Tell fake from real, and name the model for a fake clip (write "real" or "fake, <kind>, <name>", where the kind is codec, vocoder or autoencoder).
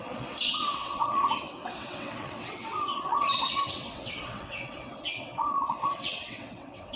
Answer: fake, vocoder, WaveNeXt